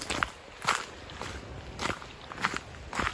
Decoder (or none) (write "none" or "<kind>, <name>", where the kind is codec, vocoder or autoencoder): none